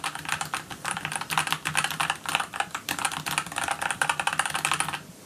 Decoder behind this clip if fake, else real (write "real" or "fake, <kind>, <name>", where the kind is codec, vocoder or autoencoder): real